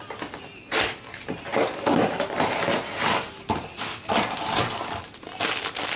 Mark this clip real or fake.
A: real